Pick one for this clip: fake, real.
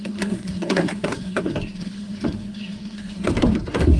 fake